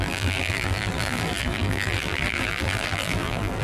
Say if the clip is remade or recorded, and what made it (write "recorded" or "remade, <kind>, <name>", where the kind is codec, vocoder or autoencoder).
remade, vocoder, BigVGAN v2